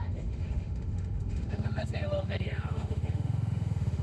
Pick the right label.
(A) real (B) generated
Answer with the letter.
B